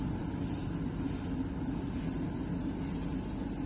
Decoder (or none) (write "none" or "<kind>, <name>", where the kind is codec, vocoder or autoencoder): vocoder, BigVGAN v2